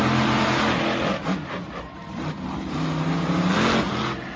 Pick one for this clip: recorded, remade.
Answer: recorded